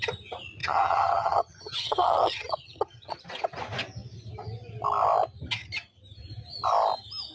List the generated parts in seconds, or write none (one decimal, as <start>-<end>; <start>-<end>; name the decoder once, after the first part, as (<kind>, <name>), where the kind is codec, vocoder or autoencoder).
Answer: 0.6-3.2 (vocoder, HiFi-GAN)